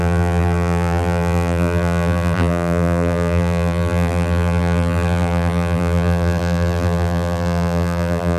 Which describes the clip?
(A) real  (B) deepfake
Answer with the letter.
B